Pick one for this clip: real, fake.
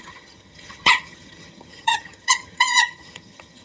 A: fake